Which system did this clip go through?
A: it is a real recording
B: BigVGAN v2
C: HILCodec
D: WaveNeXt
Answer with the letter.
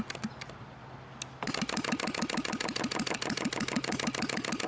A